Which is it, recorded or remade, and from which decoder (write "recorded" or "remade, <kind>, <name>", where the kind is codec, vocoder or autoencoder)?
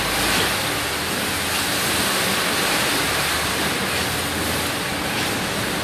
recorded